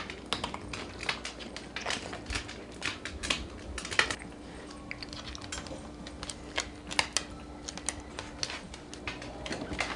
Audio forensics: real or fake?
real